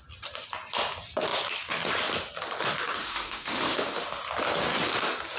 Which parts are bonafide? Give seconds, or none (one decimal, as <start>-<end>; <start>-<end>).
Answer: 0.0-3.0; 4.2-5.4